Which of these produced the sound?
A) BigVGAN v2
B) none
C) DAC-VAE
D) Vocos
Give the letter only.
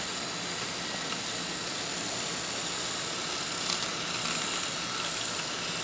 B